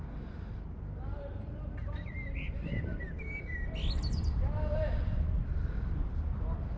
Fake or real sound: real